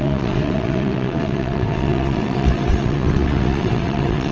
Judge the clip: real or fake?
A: fake